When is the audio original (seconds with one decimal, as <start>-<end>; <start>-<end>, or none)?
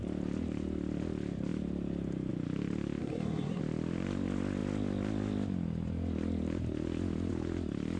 0.0-3.0; 3.6-8.0